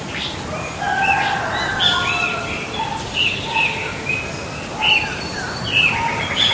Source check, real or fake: real